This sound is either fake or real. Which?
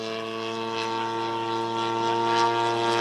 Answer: real